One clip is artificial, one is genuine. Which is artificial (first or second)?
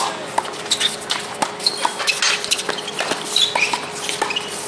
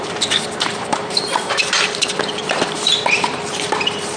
second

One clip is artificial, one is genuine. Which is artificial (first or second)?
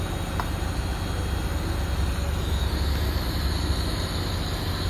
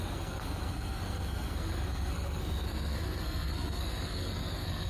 second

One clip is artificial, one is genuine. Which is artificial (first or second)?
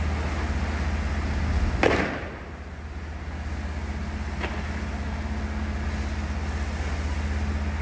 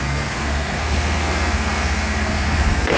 second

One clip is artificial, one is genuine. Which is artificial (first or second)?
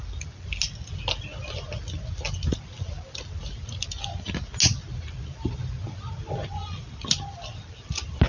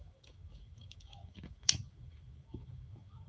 second